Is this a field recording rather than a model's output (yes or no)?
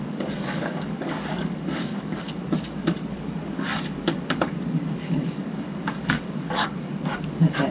no